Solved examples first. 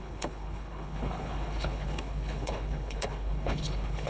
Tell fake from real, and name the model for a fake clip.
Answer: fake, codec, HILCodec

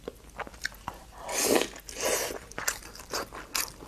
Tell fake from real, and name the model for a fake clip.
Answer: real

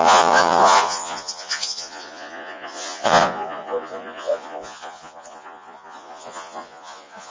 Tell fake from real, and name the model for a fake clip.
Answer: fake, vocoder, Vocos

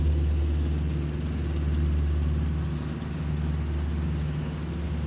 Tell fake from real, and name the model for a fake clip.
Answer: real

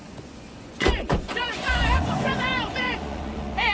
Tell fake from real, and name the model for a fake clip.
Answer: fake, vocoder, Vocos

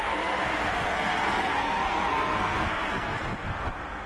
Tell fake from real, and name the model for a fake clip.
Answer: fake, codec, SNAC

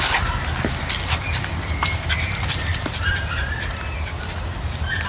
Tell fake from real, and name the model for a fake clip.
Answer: real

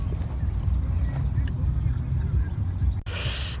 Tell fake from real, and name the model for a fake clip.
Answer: real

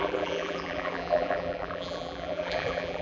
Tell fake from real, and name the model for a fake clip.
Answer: fake, vocoder, BigVGAN v2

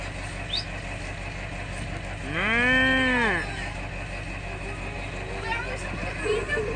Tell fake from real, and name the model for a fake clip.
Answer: real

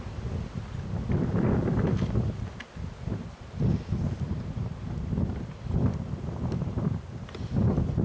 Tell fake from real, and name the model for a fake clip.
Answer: real